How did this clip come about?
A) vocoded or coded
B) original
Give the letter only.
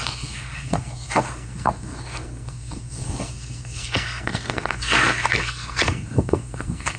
A